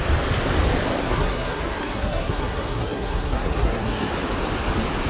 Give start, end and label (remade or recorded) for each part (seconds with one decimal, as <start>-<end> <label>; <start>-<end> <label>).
0.0-1.0 recorded; 1.0-4.1 remade; 4.1-5.1 recorded